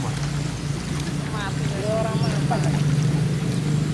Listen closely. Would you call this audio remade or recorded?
recorded